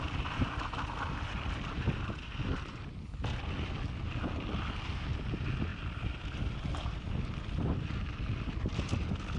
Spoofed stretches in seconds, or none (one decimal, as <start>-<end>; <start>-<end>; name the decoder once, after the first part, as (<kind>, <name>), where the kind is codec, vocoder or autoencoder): none